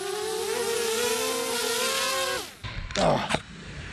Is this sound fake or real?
real